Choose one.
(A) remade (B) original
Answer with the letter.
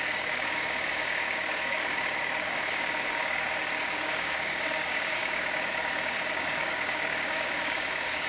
A